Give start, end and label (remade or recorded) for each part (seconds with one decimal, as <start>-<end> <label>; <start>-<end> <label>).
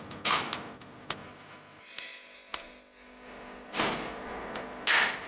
0.0-5.3 recorded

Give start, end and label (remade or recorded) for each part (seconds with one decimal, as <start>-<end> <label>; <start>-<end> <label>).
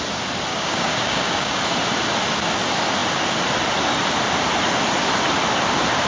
0.0-0.5 recorded; 0.5-1.6 remade; 1.6-6.1 recorded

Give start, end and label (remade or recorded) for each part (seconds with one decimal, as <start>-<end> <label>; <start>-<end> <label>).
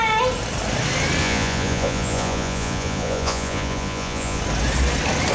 0.0-1.2 recorded; 1.2-4.4 remade; 4.4-5.3 recorded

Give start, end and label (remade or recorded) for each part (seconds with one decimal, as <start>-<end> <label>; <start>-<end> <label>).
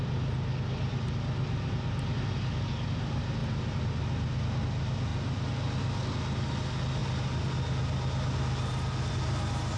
0.0-9.8 recorded